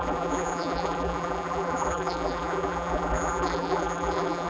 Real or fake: fake